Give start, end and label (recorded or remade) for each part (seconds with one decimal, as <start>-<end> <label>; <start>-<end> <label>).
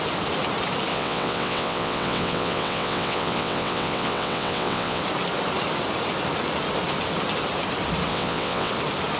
0.0-0.9 recorded; 0.9-5.0 remade; 5.0-8.1 recorded; 8.1-8.7 remade; 8.7-9.2 recorded